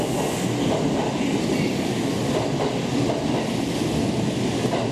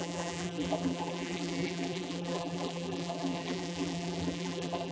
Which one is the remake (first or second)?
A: second